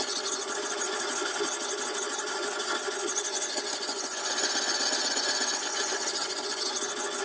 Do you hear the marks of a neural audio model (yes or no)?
yes